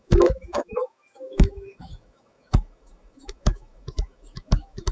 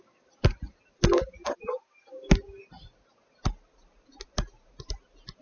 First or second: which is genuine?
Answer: second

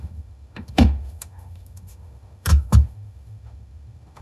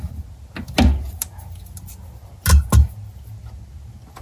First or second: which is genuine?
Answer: second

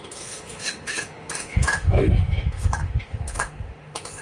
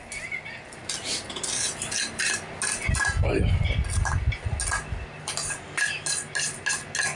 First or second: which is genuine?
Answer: second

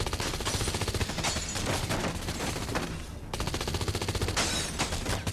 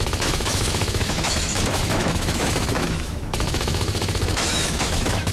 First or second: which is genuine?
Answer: first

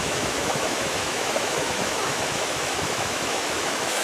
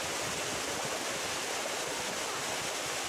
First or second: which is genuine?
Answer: second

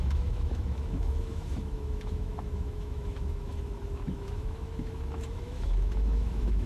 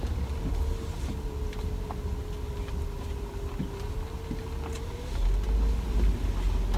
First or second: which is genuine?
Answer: second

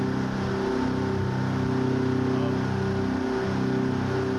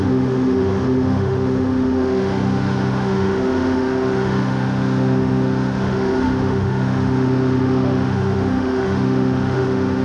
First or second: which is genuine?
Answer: first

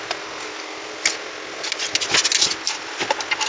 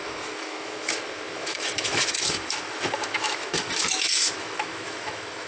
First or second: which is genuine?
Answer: first